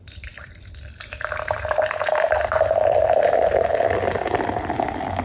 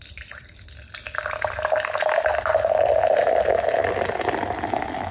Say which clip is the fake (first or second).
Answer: first